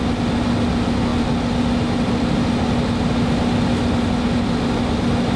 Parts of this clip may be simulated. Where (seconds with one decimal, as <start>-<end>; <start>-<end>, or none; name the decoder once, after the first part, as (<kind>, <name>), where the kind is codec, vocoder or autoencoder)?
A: none